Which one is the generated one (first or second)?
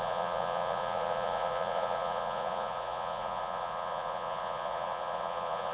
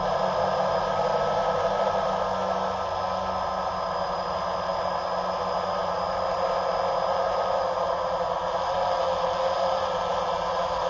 first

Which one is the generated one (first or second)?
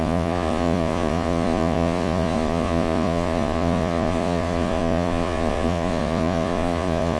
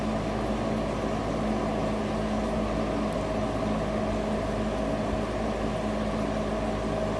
first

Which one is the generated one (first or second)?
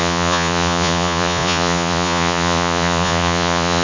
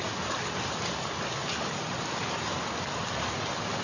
first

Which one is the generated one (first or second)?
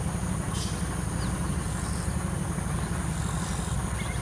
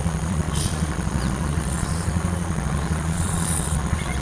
second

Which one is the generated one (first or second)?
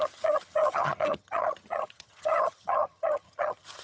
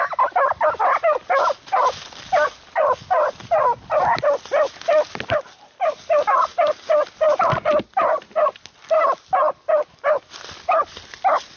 first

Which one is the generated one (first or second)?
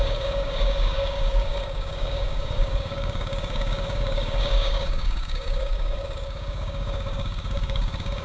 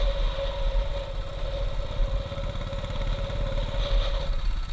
first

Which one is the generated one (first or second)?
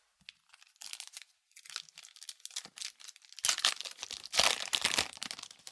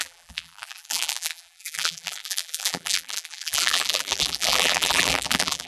second